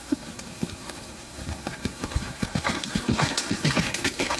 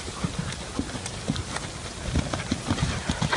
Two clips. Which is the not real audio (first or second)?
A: first